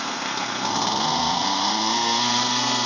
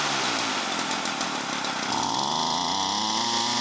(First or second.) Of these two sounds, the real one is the second